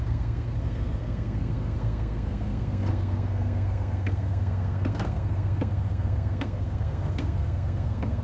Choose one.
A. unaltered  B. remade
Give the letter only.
B